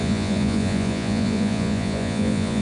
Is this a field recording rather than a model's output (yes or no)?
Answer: no